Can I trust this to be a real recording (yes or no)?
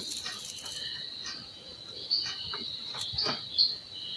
yes